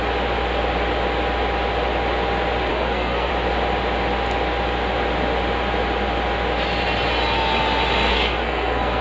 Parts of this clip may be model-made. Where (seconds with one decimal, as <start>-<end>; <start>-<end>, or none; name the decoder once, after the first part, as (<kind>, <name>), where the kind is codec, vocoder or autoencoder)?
2.7-3.3 (codec, SNAC); 8.1-9.0